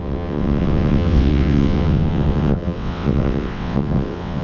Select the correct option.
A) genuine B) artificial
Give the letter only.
B